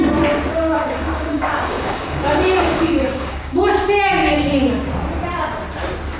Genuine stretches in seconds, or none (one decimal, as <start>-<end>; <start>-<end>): 0.0-0.5; 3.7-4.2; 4.9-6.2